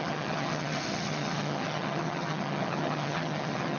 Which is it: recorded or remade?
remade